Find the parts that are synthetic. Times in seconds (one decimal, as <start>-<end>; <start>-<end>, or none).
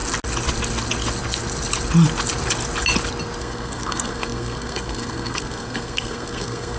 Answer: 3.4-6.8